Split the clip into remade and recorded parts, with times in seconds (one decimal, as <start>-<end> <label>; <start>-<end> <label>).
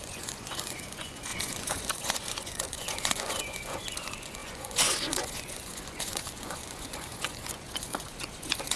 0.0-8.8 remade